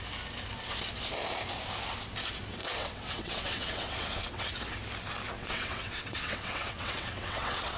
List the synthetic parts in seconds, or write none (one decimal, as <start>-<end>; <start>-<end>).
2.6-4.5; 5.4-7.8